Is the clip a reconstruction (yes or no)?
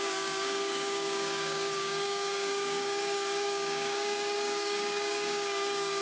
yes